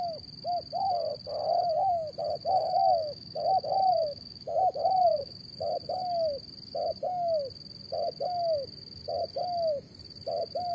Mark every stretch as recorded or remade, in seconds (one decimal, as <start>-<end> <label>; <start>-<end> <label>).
0.0-2.4 recorded; 2.4-5.4 remade; 5.4-10.7 recorded

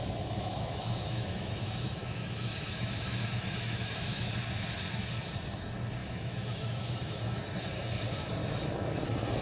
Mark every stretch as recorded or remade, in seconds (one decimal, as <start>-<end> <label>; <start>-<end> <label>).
0.0-4.3 remade; 4.3-6.0 recorded; 6.0-7.4 remade; 7.4-8.4 recorded; 8.4-9.0 remade; 9.0-9.4 recorded

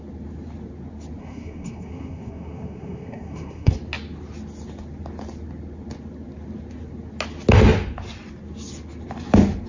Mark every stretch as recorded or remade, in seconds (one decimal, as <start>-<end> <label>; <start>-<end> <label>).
0.0-1.2 recorded; 1.2-3.7 remade; 3.7-9.7 recorded

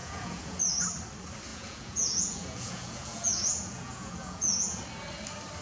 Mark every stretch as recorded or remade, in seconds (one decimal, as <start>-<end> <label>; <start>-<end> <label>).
0.0-0.6 remade; 0.6-1.5 recorded; 1.5-4.8 remade; 4.8-5.6 recorded

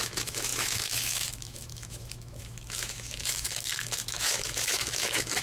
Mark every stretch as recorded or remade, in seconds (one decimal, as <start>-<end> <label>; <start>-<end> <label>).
0.0-5.4 remade